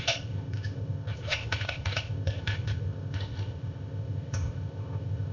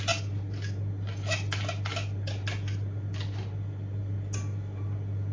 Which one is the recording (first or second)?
second